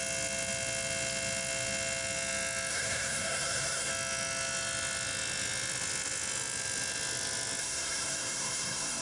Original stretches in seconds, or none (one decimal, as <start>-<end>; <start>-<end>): 0.0-2.7; 3.9-7.6